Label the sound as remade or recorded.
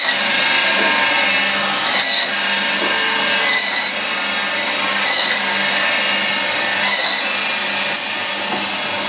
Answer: recorded